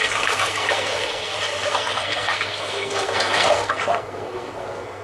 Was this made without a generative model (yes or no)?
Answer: no